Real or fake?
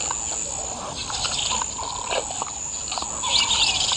real